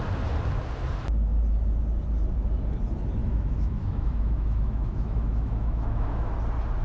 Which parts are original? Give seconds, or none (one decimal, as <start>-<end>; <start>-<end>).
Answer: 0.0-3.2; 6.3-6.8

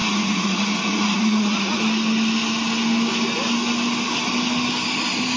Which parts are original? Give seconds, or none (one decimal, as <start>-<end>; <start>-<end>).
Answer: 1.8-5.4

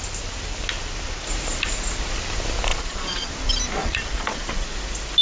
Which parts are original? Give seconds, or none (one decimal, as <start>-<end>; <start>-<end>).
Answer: 0.0-2.7; 3.3-3.8; 4.6-5.2